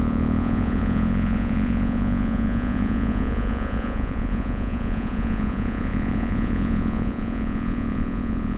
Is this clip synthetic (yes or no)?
yes